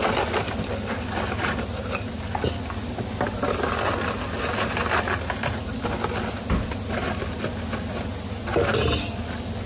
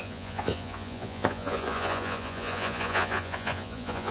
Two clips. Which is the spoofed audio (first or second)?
second